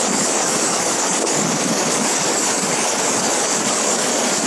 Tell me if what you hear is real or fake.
fake